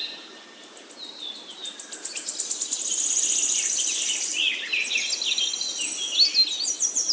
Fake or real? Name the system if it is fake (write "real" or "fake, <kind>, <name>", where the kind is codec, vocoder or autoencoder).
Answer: real